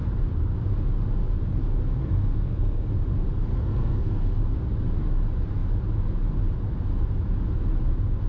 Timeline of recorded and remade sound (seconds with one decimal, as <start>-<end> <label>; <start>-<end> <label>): 0.0-2.0 recorded; 2.0-2.9 remade; 2.9-3.5 recorded; 3.5-4.4 remade; 4.4-8.3 recorded